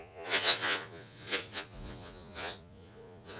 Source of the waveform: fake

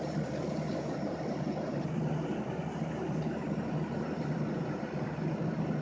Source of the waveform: fake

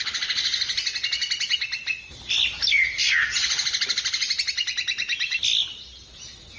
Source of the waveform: real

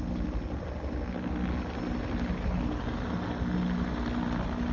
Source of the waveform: real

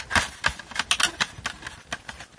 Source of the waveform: real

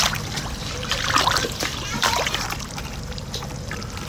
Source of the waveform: fake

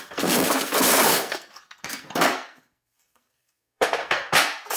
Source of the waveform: fake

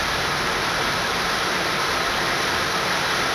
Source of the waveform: fake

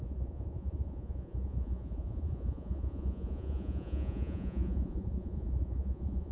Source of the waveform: fake